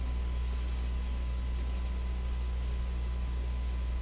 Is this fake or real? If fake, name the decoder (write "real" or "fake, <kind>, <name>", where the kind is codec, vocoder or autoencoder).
real